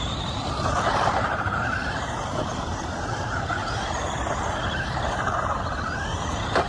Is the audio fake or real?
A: fake